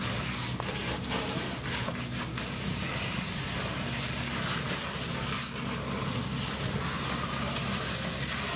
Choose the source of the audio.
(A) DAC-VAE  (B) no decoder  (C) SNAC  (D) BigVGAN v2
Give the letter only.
B